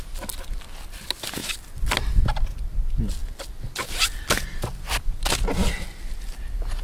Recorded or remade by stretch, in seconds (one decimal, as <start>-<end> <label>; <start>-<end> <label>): 0.0-6.8 recorded